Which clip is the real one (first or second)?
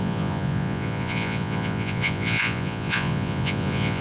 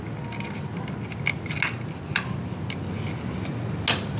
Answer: second